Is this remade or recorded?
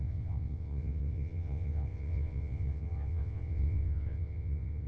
remade